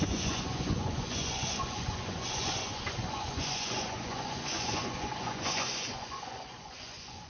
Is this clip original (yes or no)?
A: no